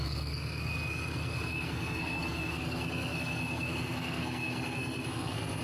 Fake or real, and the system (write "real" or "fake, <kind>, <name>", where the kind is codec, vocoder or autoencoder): fake, codec, SNAC